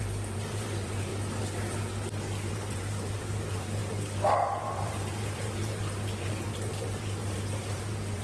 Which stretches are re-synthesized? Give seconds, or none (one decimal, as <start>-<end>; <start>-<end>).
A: 0.0-1.1; 2.5-8.2